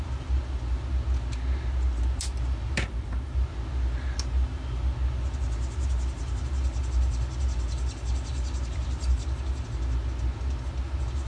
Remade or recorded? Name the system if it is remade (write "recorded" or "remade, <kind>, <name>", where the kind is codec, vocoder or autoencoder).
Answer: recorded